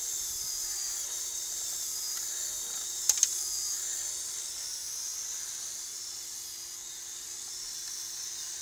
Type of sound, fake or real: real